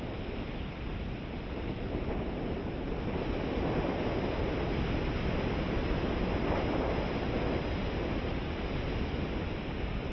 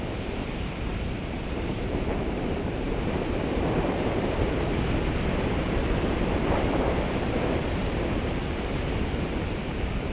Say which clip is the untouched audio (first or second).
first